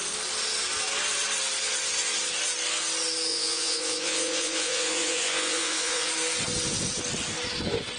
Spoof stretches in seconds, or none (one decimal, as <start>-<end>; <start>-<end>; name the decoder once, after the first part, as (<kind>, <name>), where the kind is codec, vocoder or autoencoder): 3.3-6.1 (vocoder, Vocos)